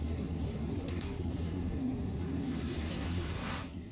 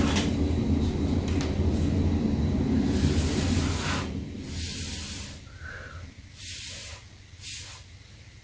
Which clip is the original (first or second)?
second